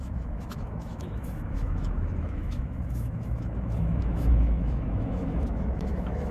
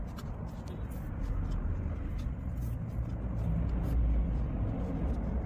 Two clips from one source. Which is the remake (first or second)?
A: first